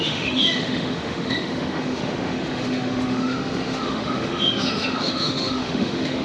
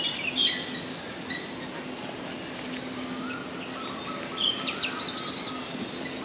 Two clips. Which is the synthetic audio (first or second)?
first